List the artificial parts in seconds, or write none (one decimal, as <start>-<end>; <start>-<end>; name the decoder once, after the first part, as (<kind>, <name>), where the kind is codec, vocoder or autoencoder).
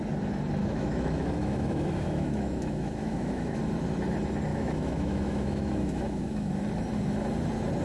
0.6-3.6 (autoencoder, DAC-VAE); 4.5-6.5